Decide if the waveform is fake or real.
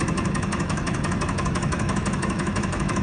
fake